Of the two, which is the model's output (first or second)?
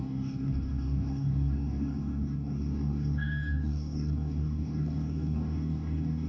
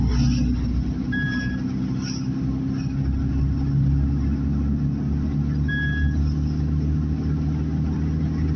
first